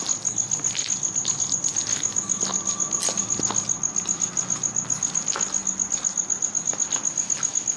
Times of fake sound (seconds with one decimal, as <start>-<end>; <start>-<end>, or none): 1.9-2.4

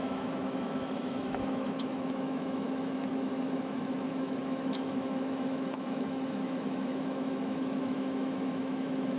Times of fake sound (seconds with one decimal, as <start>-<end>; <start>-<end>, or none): 0.0-9.2

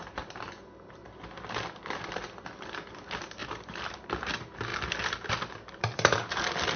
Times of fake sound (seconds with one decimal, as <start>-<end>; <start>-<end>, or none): 3.4-4.2; 4.7-6.3

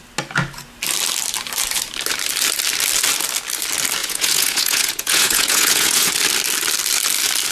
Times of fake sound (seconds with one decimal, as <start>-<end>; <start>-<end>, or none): 4.0-6.1

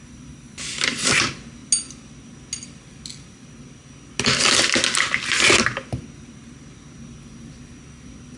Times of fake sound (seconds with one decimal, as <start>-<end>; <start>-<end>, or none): none

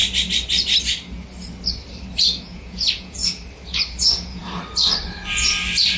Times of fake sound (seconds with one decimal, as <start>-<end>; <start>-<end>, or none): 2.4-3.2; 4.0-4.4

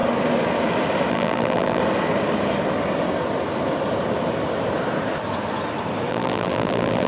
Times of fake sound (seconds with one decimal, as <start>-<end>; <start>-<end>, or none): 1.1-1.8; 6.1-7.1

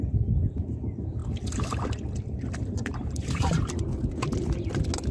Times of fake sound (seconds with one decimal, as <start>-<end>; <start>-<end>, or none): 1.2-3.8